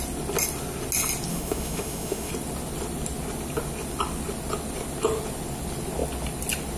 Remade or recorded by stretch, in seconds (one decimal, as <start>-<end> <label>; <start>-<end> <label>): 0.0-1.3 recorded; 1.3-2.3 remade; 2.3-6.8 recorded